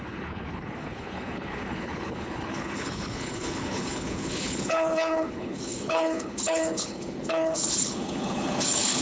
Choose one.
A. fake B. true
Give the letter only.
A